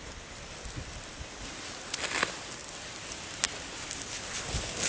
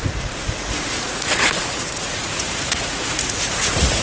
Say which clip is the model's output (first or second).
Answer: second